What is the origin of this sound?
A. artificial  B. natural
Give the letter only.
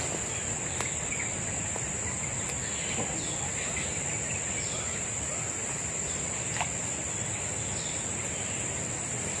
B